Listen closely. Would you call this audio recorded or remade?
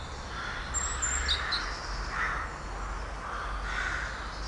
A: recorded